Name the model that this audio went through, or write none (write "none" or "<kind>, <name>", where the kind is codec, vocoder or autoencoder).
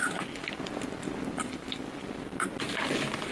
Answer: none